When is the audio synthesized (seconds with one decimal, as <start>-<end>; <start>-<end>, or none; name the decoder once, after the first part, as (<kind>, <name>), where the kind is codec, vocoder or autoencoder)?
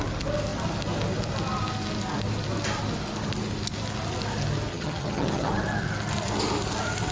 4.7-5.5 (vocoder, HiFi-GAN)